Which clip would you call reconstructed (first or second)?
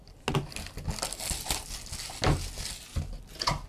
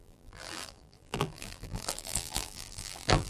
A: second